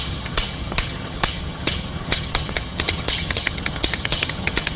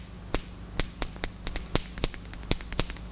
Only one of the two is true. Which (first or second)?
second